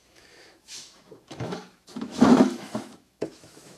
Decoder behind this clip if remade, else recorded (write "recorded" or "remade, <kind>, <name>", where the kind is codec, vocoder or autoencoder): remade, autoencoder, DAC-VAE